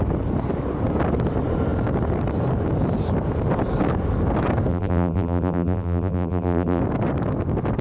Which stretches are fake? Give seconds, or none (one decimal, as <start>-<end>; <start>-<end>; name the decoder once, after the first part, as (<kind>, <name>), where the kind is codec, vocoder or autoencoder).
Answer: 4.7-6.8 (vocoder, BigVGAN v2)